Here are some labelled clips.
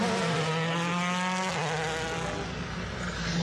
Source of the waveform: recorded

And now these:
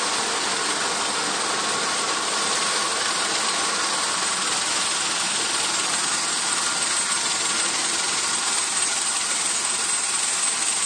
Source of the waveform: recorded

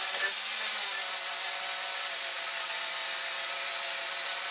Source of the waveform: recorded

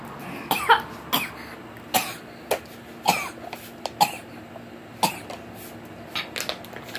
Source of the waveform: recorded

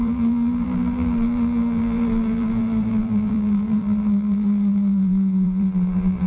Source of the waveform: remade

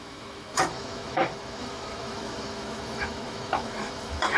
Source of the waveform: remade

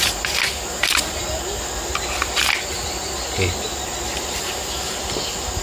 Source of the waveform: recorded